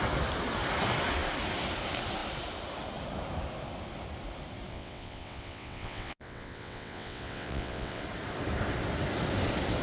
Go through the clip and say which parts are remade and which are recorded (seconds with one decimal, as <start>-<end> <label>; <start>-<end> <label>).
0.0-4.7 recorded; 4.7-8.0 remade; 8.0-9.8 recorded